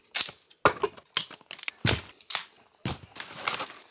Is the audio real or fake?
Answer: real